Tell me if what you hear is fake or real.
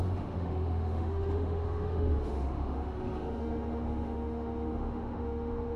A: fake